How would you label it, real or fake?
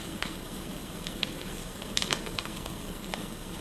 fake